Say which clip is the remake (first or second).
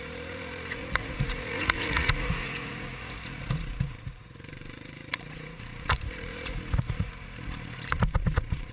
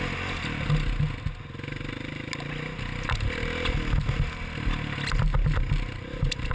first